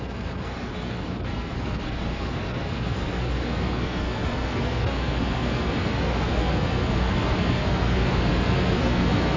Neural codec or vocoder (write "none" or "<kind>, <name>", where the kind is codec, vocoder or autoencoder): codec, SNAC